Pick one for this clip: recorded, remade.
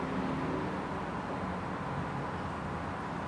recorded